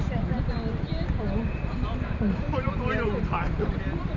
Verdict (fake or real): real